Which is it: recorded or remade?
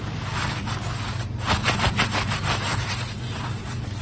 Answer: recorded